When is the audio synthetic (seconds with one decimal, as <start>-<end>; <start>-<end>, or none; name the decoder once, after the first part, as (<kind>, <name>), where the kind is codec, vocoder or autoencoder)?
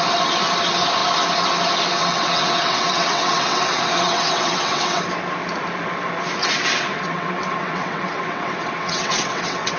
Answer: 2.0-5.0 (vocoder, WaveNeXt); 6.4-9.8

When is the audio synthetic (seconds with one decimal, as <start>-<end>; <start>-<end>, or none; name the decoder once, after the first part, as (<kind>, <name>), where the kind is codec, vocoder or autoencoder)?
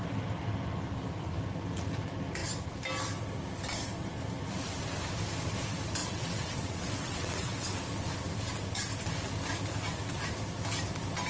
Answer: 6.0-7.8 (vocoder, WaveNeXt)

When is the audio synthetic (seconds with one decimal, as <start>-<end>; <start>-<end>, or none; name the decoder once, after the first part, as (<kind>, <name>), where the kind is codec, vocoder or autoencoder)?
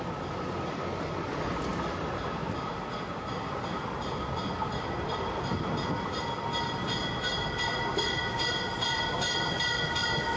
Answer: none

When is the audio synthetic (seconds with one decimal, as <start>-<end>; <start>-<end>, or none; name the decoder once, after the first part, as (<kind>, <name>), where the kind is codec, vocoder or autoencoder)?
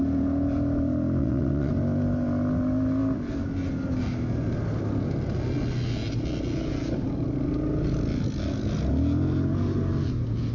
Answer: 1.2-1.7 (vocoder, WaveNeXt)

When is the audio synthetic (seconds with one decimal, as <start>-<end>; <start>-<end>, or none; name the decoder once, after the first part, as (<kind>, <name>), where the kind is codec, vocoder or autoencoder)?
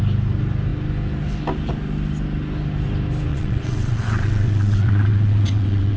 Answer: 3.3-6.0 (vocoder, WaveNeXt)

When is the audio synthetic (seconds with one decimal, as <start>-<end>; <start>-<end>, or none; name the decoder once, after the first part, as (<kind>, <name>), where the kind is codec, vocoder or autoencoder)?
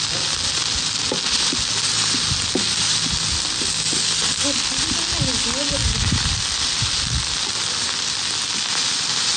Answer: none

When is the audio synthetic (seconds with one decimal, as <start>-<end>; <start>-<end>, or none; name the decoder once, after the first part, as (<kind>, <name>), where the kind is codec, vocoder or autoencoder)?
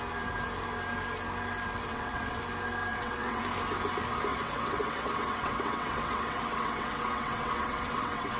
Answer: 1.9-2.4 (vocoder, WaveNeXt); 2.9-3.4; 4.3-8.4